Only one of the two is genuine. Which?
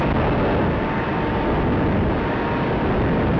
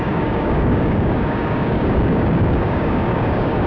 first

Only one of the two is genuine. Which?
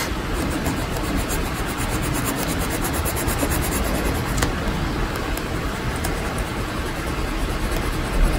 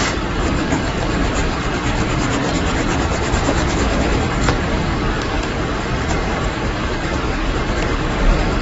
first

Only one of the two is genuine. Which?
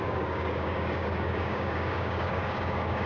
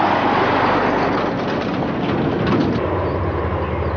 second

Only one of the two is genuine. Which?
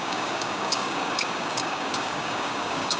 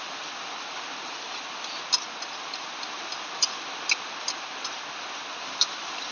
second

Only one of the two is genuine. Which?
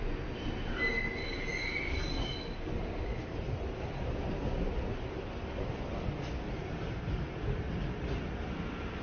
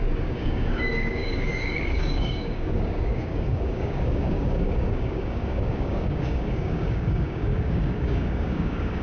first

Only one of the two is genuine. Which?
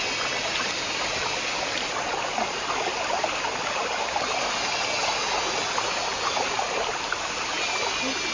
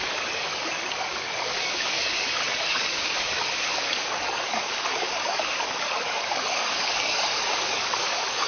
first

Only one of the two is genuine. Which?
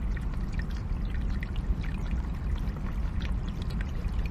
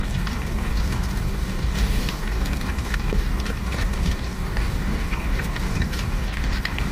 first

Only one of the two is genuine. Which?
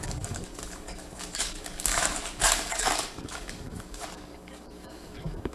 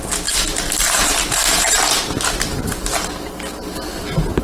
second